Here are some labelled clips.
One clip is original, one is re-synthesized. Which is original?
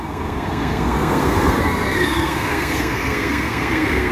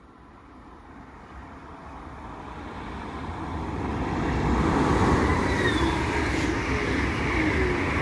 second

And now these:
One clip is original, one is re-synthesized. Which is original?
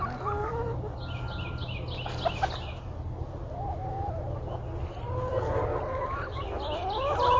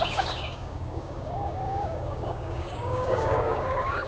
first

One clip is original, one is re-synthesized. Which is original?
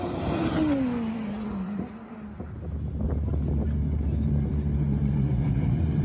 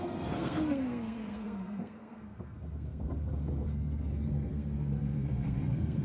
first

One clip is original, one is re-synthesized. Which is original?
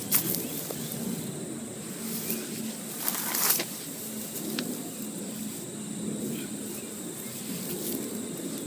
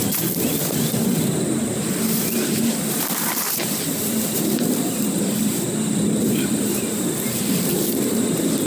first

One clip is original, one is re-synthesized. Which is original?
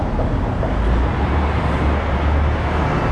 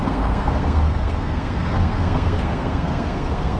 first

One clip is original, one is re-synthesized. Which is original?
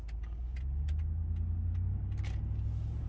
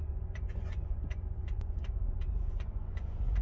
first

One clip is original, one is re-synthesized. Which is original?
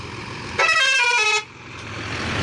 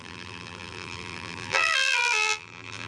first